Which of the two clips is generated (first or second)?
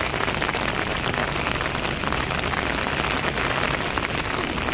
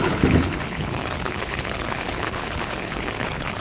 second